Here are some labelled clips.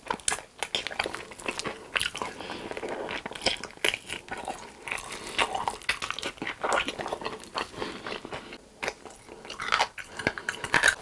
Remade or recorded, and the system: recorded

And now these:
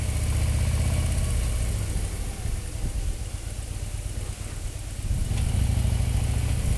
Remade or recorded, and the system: recorded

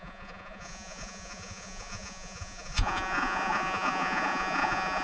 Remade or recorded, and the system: remade, vocoder, Vocos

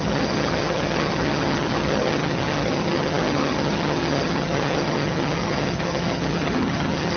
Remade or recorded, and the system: remade, vocoder, HiFi-GAN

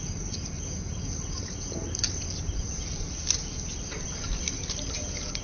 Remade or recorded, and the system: recorded